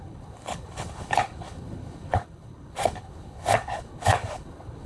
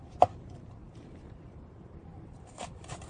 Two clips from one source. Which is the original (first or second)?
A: second